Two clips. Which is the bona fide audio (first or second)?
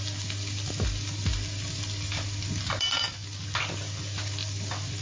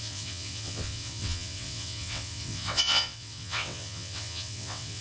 first